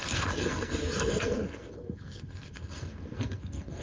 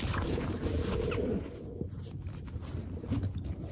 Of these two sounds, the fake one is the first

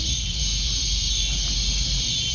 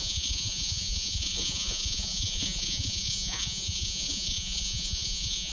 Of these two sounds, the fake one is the second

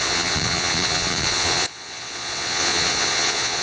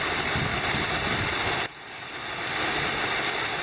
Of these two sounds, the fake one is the first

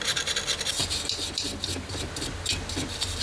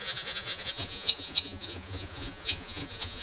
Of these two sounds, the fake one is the second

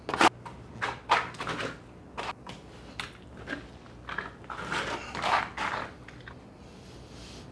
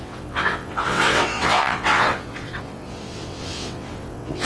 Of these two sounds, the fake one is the second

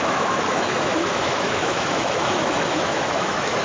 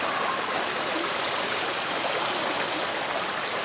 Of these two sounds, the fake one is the first